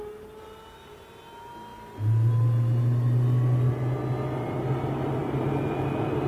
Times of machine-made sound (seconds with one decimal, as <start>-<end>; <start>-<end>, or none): none